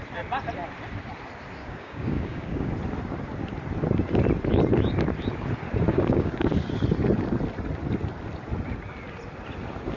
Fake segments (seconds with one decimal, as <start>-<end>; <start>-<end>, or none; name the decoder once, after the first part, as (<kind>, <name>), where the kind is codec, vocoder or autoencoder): 1.6-2.7 (codec, DAC); 5.9-6.5